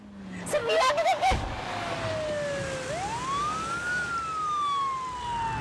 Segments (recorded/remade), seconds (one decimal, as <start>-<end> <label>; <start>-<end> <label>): 0.0-0.6 recorded; 0.6-2.0 remade; 2.0-3.4 recorded; 3.4-4.1 remade; 4.1-5.6 recorded